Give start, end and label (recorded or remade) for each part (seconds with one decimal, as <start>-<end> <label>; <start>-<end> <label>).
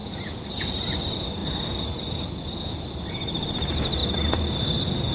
0.0-5.1 recorded